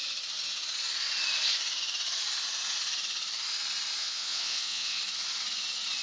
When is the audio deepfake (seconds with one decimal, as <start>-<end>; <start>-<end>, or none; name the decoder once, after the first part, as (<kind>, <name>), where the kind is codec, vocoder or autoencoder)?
4.0-5.0 (vocoder, WaveNeXt)